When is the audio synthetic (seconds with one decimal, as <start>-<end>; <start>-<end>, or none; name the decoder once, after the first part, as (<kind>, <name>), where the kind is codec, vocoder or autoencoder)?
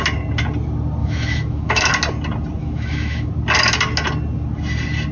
1.0-1.9 (autoencoder, DAC-VAE); 2.6-3.3